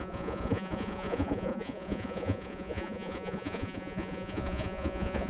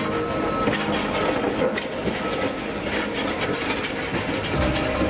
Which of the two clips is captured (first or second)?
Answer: second